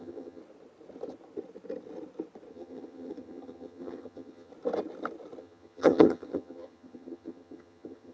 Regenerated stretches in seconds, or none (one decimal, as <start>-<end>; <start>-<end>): 0.0-0.4; 2.5-4.5; 5.4-8.1